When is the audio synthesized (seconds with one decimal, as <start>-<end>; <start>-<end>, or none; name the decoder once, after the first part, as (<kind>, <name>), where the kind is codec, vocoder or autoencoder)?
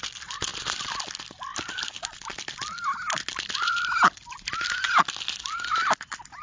0.5-1.2 (vocoder, BigVGAN v2)